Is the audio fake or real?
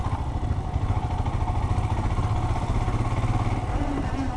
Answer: real